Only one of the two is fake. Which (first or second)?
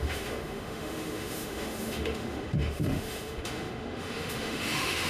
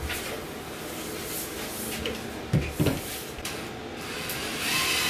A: first